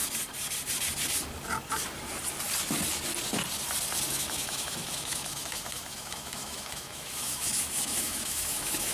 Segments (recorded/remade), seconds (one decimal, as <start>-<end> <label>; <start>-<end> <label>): 0.0-4.1 recorded; 4.1-8.9 remade